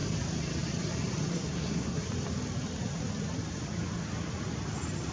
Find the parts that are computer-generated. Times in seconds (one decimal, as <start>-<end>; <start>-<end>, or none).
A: 1.3-2.0